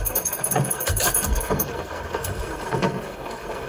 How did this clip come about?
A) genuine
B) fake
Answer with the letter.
B